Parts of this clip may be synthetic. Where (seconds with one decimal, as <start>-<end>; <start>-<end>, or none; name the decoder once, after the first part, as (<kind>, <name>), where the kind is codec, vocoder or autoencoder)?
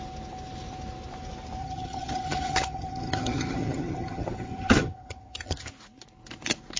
1.6-5.7 (vocoder, HiFi-GAN)